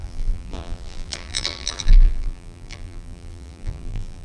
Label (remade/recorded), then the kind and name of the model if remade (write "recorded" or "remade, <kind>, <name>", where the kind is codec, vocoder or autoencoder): remade, vocoder, BigVGAN v2